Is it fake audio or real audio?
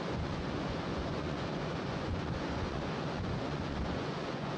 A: fake